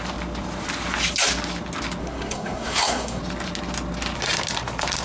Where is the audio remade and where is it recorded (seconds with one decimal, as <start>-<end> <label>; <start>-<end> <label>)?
0.0-2.0 recorded; 2.0-3.2 remade; 3.2-5.0 recorded